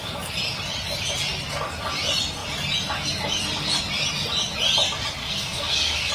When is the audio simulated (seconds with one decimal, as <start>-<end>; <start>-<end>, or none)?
5.2-6.1